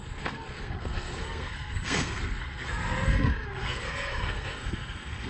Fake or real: fake